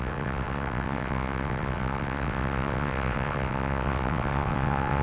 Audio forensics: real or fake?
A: fake